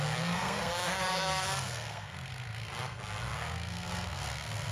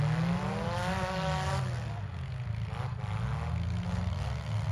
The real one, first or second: second